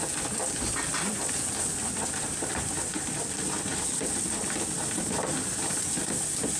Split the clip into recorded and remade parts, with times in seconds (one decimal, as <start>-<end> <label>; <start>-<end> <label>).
0.0-6.6 recorded